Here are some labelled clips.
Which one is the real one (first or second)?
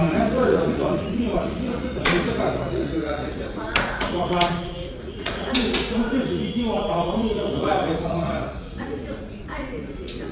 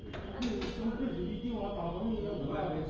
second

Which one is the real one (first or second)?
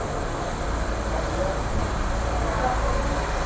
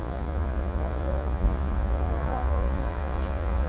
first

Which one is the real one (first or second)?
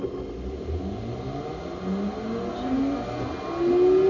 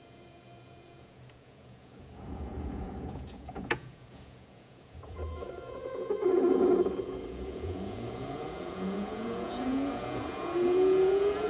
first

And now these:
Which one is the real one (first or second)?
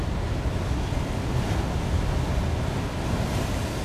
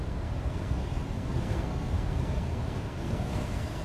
first